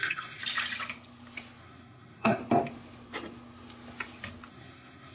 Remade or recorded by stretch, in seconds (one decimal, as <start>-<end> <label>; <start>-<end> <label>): 0.0-0.4 remade; 0.4-1.6 recorded; 1.6-2.4 remade; 2.4-4.5 recorded; 4.5-5.1 remade